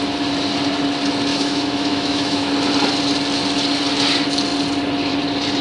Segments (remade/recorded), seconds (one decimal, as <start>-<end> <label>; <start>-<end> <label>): 0.0-1.3 recorded; 1.3-2.5 remade; 2.5-5.6 recorded